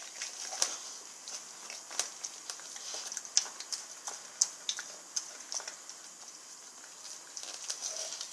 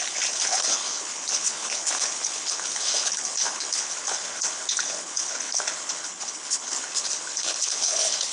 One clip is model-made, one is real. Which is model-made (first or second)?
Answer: second